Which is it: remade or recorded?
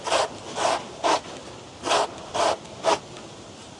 recorded